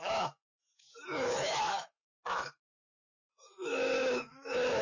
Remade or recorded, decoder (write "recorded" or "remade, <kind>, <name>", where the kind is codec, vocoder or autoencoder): remade, autoencoder, DAC-VAE